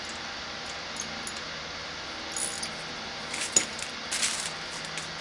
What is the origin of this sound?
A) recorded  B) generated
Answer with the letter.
A